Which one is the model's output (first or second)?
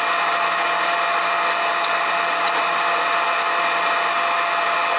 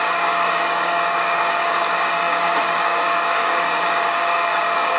second